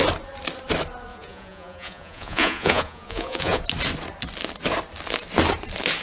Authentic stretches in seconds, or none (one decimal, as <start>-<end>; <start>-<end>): 0.0-1.1; 3.6-6.0